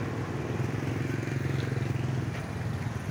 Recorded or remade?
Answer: recorded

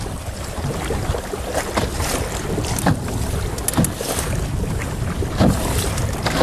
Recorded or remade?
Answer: recorded